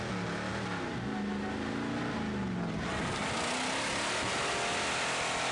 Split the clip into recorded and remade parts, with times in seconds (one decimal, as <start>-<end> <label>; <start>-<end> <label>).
0.0-5.5 recorded